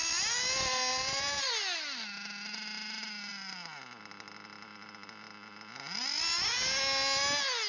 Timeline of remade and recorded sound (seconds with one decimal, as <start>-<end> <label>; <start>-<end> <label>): 0.0-0.9 recorded; 0.9-1.5 remade; 1.5-7.7 recorded